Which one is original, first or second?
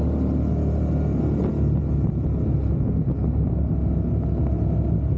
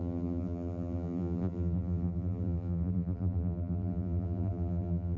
first